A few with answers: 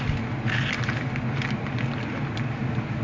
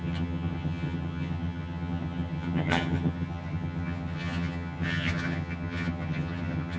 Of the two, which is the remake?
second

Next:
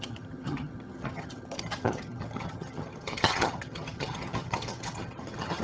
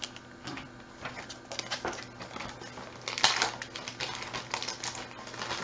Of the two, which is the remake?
first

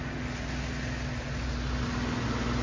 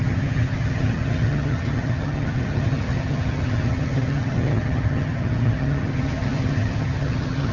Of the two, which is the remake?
second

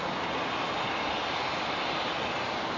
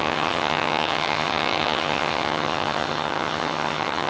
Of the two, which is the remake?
second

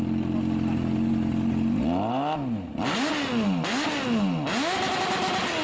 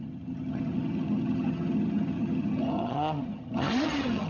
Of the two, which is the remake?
second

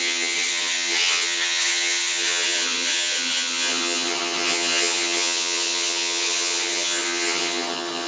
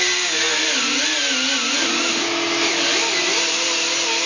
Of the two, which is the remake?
first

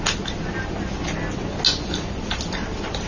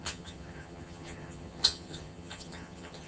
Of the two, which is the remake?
second